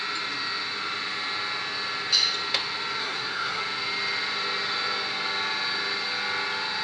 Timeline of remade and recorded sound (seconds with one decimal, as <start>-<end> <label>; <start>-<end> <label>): 0.0-3.0 recorded; 3.0-3.6 remade; 3.6-6.8 recorded